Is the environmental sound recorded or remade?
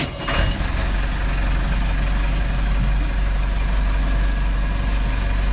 recorded